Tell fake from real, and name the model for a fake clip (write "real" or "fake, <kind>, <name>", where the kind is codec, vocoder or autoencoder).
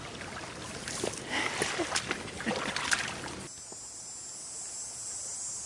real